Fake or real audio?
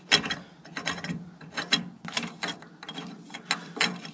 real